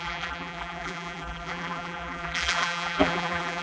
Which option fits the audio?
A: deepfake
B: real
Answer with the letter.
A